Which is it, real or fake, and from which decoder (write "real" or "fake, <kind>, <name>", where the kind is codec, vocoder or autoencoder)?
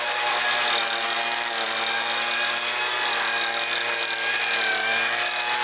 real